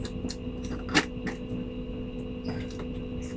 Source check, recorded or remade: recorded